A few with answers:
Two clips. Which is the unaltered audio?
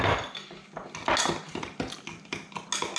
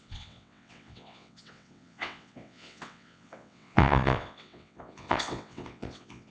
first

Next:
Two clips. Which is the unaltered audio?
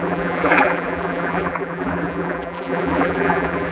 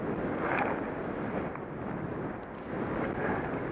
second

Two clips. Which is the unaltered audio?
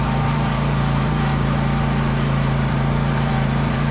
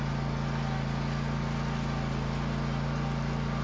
second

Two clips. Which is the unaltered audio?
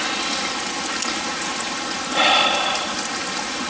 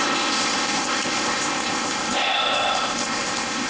first